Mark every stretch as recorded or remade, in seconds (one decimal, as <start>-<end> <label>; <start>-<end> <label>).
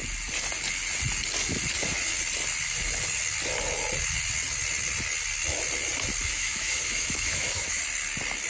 0.0-6.2 recorded; 6.2-7.8 remade; 7.8-8.5 recorded